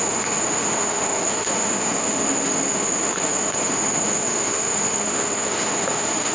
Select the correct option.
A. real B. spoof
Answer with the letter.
B